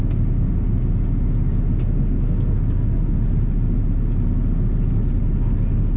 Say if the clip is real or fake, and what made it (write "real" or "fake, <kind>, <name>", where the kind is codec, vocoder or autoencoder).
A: real